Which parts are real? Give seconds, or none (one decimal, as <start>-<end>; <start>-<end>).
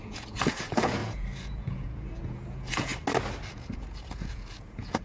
2.9-3.5